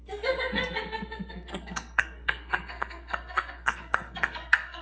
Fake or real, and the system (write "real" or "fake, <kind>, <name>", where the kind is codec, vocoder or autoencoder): fake, codec, SNAC